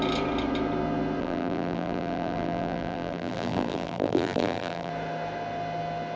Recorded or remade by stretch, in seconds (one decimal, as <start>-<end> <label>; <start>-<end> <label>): 0.0-1.2 recorded; 1.2-4.9 remade; 4.9-6.2 recorded